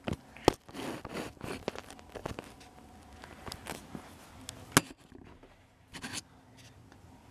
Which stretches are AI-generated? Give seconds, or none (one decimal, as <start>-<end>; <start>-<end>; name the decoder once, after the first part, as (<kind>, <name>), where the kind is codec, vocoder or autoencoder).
none